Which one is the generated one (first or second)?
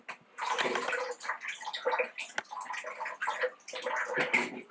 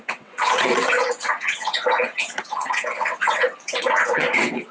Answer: second